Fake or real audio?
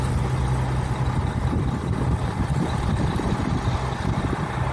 real